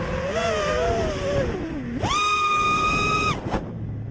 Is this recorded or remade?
recorded